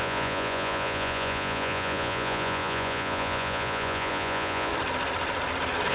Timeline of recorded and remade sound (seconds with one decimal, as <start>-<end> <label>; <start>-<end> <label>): 0.0-4.7 remade; 4.7-5.9 recorded